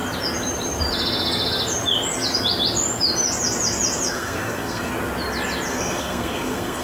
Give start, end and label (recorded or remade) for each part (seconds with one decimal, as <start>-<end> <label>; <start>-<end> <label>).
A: 0.0-4.1 recorded; 4.1-4.9 remade; 4.9-5.7 recorded; 5.7-6.8 remade